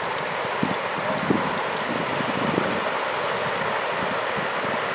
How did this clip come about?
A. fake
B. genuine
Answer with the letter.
B